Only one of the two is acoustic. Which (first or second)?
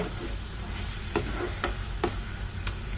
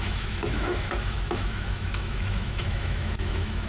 first